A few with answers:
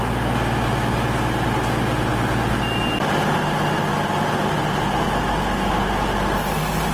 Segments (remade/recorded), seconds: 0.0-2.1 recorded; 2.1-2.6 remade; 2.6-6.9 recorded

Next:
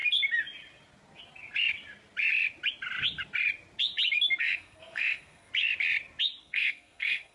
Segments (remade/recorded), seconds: 0.0-4.4 recorded; 4.4-5.5 remade; 5.5-6.4 recorded; 6.4-7.3 remade